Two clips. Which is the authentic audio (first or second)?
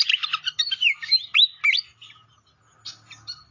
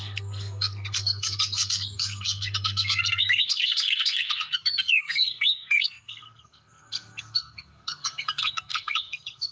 first